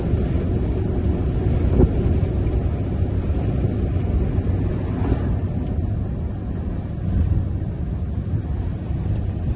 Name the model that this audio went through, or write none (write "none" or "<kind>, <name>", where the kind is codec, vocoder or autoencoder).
none